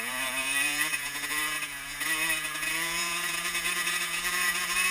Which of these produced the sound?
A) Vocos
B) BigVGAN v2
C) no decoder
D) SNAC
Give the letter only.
A